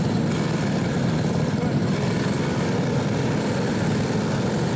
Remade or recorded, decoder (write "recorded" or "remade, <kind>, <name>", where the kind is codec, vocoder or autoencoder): recorded